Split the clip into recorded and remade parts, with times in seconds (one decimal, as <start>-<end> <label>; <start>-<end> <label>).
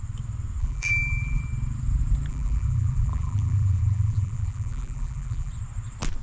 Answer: 0.0-0.6 recorded; 0.6-1.4 remade; 1.4-2.3 recorded; 2.3-5.5 remade; 5.5-6.2 recorded